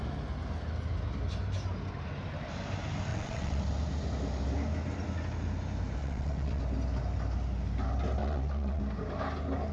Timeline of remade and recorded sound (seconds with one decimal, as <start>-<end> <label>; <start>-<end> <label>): 0.0-3.1 recorded; 3.1-3.6 remade; 3.6-6.0 recorded; 6.0-6.6 remade; 6.6-8.2 recorded; 8.2-8.8 remade; 8.8-9.7 recorded